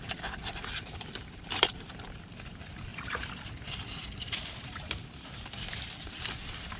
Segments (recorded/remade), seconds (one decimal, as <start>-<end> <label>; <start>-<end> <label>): 0.0-0.6 recorded; 0.6-1.9 remade; 1.9-2.9 recorded; 2.9-6.8 remade